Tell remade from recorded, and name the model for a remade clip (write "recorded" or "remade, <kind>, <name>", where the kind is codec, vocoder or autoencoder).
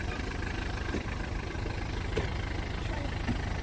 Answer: recorded